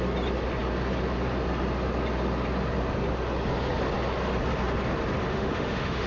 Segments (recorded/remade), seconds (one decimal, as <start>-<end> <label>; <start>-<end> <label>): 0.0-5.2 recorded; 5.2-6.1 remade